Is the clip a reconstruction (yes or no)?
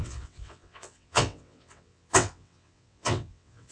yes